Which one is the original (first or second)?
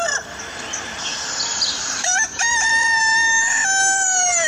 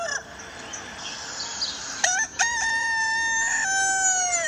second